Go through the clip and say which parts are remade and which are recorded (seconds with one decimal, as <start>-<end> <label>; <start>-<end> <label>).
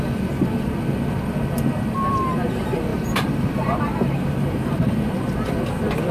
0.0-2.9 recorded; 2.9-4.7 remade; 4.7-6.1 recorded